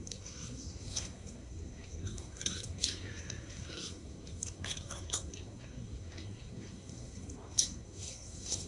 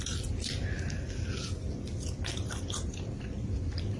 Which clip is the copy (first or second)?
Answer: first